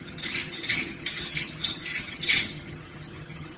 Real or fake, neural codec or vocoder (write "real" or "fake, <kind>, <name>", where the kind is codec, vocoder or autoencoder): fake, vocoder, HiFi-GAN